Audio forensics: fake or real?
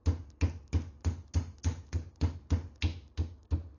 real